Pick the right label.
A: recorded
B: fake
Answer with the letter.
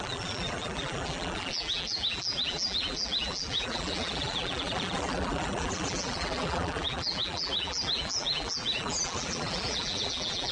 B